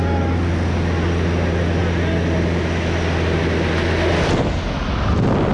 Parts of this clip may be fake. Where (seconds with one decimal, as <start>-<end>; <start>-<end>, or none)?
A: none